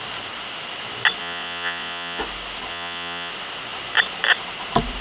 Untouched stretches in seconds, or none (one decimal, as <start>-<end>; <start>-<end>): 0.0-1.2; 2.2-2.7; 3.3-5.0